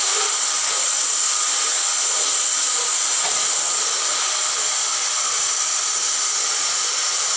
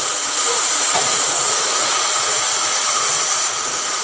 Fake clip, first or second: second